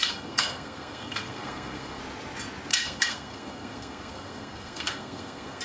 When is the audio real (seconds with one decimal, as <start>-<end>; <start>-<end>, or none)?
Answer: 2.0-2.7